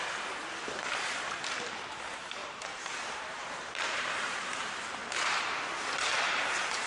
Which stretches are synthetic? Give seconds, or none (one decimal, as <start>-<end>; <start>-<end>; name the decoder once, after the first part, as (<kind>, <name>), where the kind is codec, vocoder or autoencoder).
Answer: 2.4-5.6 (vocoder, BigVGAN v2); 6.1-6.9